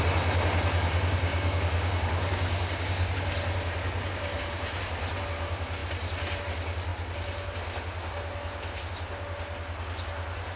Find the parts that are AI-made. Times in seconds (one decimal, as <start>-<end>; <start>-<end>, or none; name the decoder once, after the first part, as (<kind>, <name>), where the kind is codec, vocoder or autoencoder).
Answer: 1.3-3.1 (codec, DAC)